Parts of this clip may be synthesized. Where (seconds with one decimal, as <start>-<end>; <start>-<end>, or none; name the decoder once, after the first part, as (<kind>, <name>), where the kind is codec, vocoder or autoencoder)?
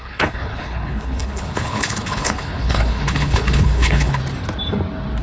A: 0.0-4.2 (codec, HILCodec)